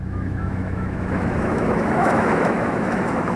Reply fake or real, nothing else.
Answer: fake